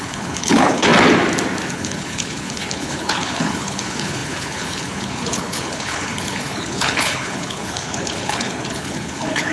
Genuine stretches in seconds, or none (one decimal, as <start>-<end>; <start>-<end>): 0.9-1.7